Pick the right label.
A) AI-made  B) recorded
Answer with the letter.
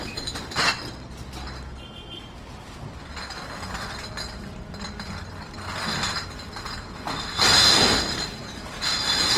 B